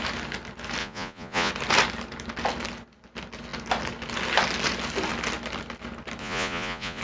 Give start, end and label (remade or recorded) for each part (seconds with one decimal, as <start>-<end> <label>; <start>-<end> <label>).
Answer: 0.0-0.8 recorded; 0.8-1.5 remade; 1.5-6.2 recorded; 6.2-7.0 remade